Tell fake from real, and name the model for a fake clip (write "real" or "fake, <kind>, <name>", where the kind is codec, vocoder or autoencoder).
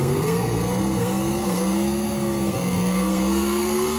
fake, codec, SNAC